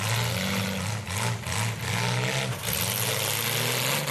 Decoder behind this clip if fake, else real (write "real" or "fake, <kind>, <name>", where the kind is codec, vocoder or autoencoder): real